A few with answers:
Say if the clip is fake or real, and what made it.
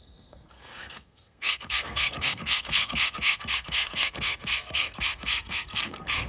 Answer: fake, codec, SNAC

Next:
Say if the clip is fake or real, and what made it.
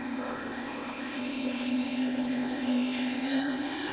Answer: fake, codec, ZipCodec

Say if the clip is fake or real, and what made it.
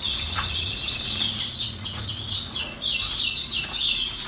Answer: fake, vocoder, Vocos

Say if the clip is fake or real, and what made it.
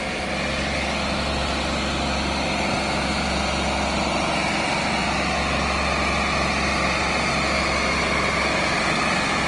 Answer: real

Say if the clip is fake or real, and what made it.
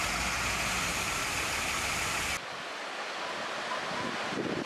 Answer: real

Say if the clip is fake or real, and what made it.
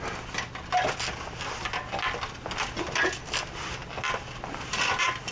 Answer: real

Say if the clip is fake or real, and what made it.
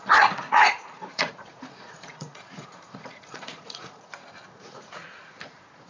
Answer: fake, vocoder, Vocos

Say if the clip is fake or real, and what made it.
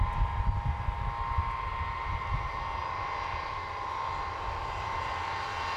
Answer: real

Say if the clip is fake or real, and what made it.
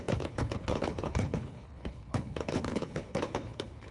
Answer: fake, codec, HILCodec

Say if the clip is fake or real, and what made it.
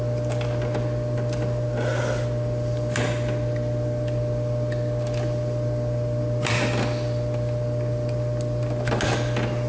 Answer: real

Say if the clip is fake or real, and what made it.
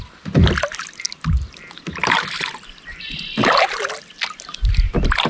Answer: fake, vocoder, BigVGAN v2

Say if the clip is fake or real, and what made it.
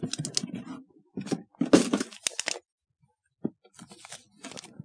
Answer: real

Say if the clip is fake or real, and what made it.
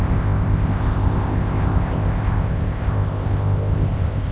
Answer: fake, codec, ZipCodec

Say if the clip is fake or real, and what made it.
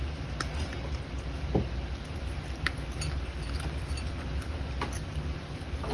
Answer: real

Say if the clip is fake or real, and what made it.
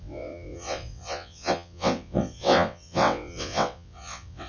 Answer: fake, vocoder, WaveNeXt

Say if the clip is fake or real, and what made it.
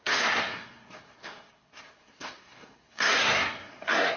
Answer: fake, codec, SNAC